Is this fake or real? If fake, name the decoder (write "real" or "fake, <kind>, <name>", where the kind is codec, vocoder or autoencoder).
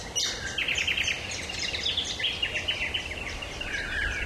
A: real